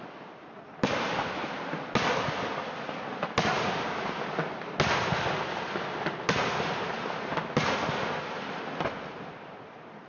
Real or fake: real